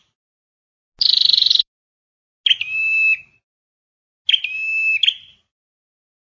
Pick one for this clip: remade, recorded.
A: recorded